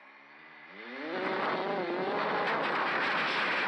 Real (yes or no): yes